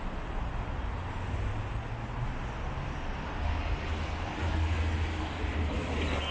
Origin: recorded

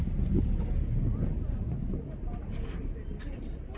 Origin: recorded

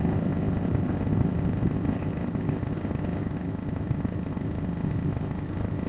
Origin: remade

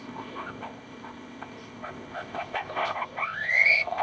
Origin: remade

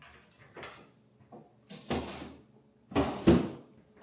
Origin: recorded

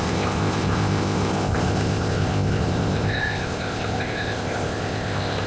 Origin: remade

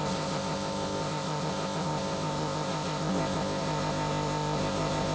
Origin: remade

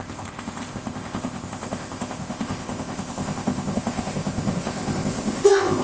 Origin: remade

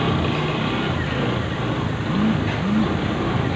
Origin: recorded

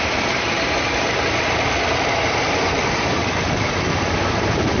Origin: recorded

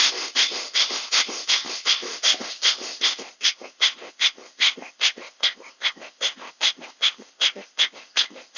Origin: remade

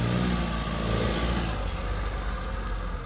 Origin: recorded